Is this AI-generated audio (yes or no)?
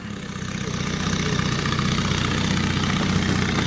no